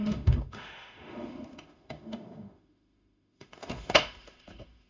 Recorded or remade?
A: remade